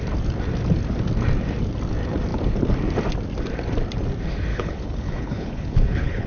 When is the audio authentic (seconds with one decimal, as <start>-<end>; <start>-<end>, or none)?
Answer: 0.0-4.5